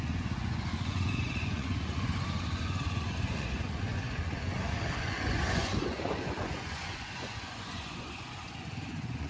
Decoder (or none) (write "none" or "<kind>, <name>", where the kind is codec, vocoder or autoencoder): vocoder, Vocos